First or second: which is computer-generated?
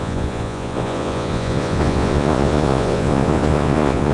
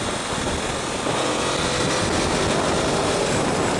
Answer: first